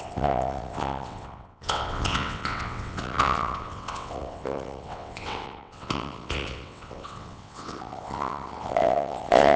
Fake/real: fake